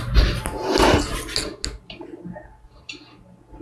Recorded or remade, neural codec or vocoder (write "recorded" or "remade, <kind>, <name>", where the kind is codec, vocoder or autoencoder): recorded